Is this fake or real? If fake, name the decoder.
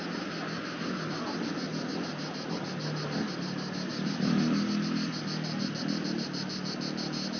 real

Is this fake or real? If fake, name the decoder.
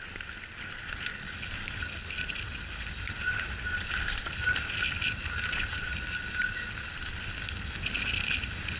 real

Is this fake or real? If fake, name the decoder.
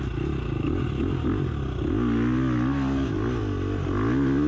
real